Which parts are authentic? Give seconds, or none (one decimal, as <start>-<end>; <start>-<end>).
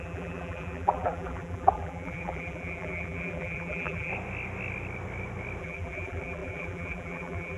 4.1-5.6